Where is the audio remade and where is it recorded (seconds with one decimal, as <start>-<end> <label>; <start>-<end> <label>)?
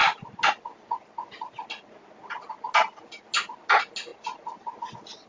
0.0-5.3 recorded